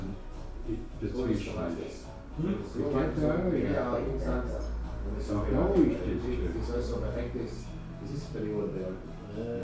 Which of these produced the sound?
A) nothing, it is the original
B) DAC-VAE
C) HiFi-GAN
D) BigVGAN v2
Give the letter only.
A